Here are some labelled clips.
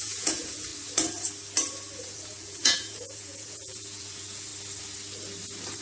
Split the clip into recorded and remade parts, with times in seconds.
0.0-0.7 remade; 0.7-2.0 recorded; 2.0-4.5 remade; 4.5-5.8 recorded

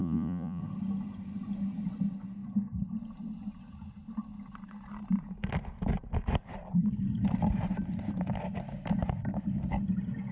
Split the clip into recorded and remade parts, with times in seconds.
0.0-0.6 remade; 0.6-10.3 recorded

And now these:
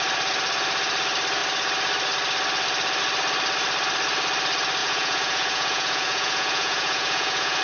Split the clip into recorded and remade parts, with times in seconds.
0.0-4.8 recorded; 4.8-7.6 remade

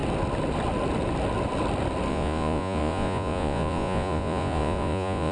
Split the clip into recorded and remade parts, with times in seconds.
0.0-2.1 recorded; 2.1-5.3 remade

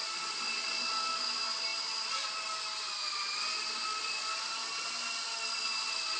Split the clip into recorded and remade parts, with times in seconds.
0.0-6.2 recorded

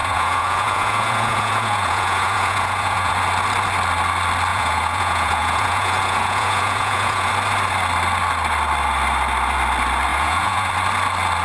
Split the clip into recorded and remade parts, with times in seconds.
0.0-3.1 remade; 3.1-4.5 recorded; 4.5-7.3 remade; 7.3-10.1 recorded; 10.1-10.7 remade; 10.7-11.4 recorded